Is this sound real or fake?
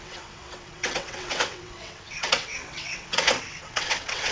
fake